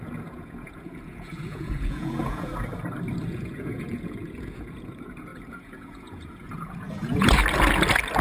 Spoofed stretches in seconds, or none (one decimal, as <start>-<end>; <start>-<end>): 0.0-2.5; 3.3-7.4